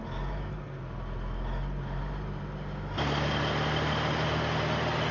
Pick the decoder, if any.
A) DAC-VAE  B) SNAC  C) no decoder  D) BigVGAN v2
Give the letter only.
C